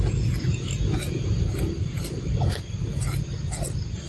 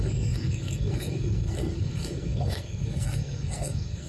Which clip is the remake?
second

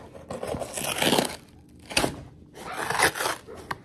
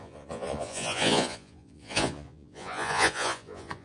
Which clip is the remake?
second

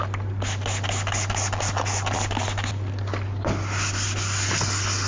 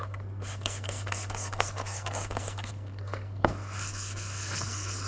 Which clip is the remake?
second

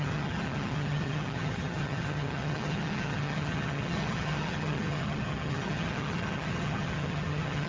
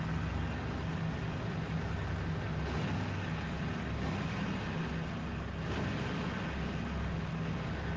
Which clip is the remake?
first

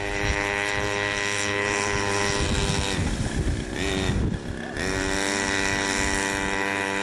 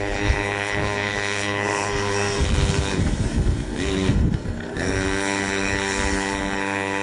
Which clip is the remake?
second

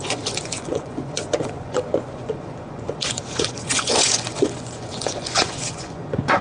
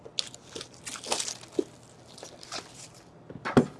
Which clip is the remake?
first